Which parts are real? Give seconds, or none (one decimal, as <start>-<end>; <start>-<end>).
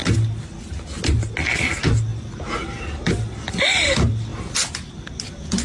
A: 0.0-5.6